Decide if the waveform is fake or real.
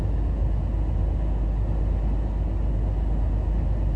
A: real